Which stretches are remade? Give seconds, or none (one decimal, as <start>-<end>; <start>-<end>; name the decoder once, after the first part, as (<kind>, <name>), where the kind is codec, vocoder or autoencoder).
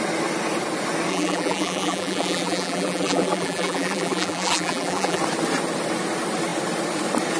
1.1-5.2 (vocoder, BigVGAN v2)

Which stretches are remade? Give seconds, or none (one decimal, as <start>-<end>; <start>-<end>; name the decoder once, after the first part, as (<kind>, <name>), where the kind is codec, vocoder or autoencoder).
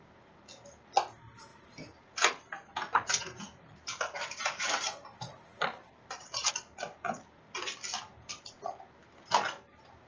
1.5-6.5 (vocoder, BigVGAN v2)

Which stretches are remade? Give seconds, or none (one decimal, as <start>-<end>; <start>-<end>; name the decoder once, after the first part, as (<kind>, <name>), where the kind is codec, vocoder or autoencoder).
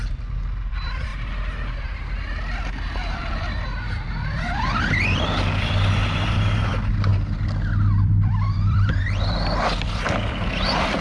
0.0-1.1 (vocoder, BigVGAN v2); 3.1-7.1; 8.0-11.0